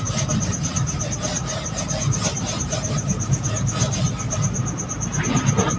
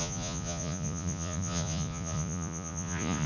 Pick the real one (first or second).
first